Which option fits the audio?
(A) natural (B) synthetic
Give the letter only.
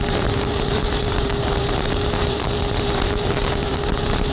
B